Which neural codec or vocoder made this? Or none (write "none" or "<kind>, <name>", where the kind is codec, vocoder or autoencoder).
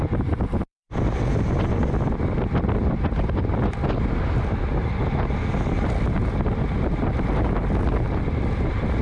none